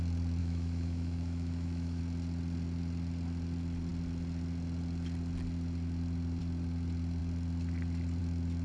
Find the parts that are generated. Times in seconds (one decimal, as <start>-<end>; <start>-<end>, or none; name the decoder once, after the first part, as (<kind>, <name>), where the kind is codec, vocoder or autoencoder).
0.4-2.0 (autoencoder, DAC-VAE)